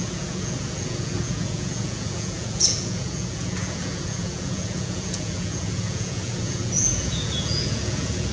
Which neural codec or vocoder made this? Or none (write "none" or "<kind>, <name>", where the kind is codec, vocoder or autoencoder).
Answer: vocoder, Vocos